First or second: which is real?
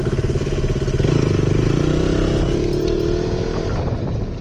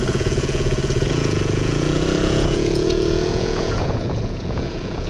first